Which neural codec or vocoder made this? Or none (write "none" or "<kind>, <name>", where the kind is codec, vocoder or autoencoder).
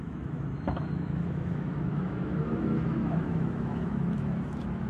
autoencoder, DAC-VAE